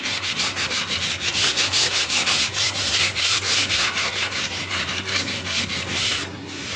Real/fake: fake